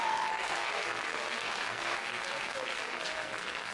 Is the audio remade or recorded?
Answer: remade